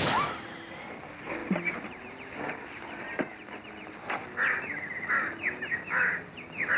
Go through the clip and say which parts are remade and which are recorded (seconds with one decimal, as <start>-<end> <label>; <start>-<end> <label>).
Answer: 0.0-1.4 recorded; 1.4-2.1 remade; 2.1-6.8 recorded